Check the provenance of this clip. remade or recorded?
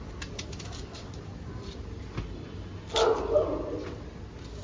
recorded